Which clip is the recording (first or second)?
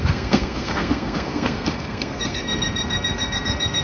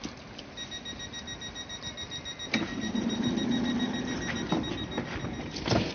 second